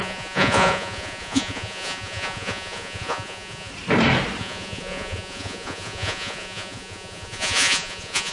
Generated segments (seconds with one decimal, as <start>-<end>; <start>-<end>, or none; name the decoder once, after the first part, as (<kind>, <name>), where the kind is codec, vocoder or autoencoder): 0.0-3.7 (vocoder, Vocos); 4.4-8.3

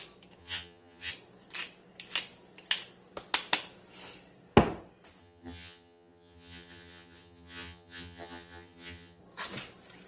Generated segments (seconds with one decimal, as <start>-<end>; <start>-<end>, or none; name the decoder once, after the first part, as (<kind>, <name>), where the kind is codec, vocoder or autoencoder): 0.4-1.1 (vocoder, HiFi-GAN); 5.2-9.2